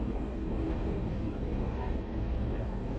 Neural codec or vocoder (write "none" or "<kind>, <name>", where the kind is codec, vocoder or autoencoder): codec, DAC